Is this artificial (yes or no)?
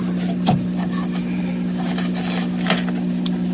no